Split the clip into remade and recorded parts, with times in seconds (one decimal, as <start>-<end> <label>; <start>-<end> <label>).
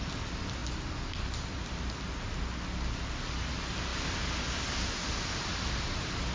0.0-6.3 recorded